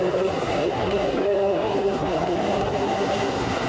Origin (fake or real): fake